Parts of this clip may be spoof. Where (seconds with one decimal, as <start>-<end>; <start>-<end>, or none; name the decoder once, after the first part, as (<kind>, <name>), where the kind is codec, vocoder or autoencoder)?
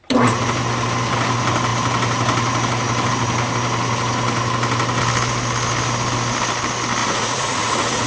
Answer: 7.0-8.1 (vocoder, Vocos)